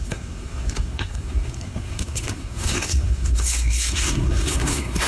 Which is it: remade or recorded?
remade